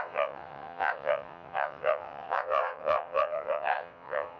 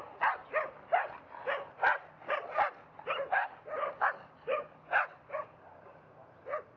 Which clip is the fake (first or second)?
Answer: first